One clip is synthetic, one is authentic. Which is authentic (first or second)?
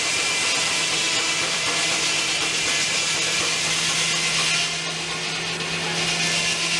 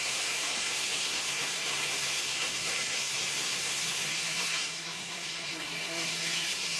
first